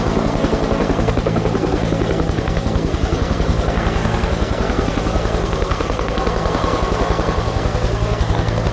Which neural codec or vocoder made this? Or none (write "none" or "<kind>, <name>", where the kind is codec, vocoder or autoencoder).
codec, SNAC